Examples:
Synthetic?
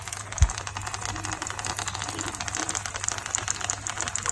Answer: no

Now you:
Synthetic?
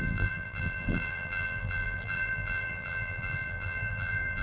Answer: yes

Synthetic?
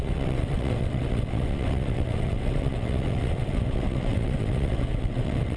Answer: yes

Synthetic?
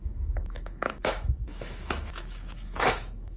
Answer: yes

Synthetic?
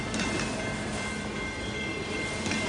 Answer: no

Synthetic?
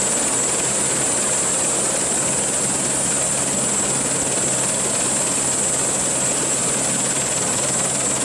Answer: no